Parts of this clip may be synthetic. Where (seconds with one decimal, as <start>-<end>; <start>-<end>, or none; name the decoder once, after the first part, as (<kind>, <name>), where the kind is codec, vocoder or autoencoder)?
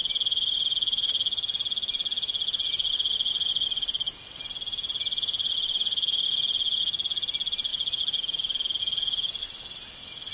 none